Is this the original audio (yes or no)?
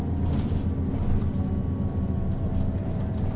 yes